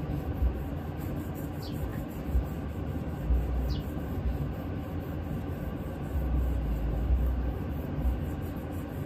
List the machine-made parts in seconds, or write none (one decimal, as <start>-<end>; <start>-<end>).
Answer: none